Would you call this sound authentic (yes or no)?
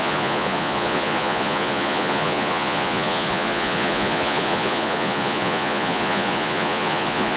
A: no